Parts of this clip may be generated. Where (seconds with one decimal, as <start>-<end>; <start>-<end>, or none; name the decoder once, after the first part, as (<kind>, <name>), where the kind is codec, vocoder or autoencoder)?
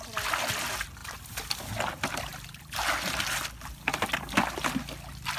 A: none